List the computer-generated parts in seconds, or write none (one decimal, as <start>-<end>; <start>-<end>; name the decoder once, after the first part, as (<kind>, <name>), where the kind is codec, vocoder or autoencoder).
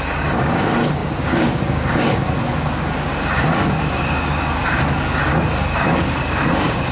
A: 0.0-3.1 (codec, DAC); 3.8-6.9